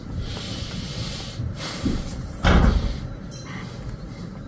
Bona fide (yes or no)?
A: no